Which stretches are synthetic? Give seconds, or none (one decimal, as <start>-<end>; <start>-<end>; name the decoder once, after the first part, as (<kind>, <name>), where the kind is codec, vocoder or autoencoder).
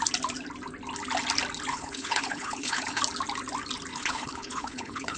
1.7-3.0 (codec, HILCodec); 3.9-5.2